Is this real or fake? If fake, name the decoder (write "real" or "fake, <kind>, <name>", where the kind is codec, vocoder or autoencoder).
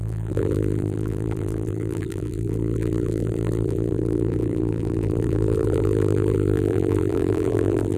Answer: fake, vocoder, BigVGAN v2